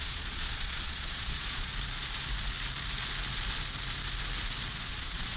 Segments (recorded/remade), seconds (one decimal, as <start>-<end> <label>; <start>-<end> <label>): 0.0-1.7 remade; 1.7-4.9 recorded; 4.9-5.4 remade